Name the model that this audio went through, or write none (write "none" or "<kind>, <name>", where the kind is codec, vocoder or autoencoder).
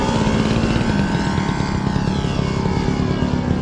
none